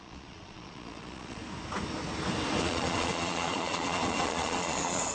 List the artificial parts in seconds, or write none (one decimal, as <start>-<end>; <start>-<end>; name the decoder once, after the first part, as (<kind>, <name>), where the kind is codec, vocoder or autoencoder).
0.0-1.4 (vocoder, Vocos); 2.6-5.1